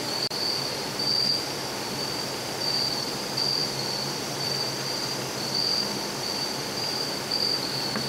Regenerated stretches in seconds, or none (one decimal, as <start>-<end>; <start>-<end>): 0.0-1.3; 2.6-5.6; 6.3-8.1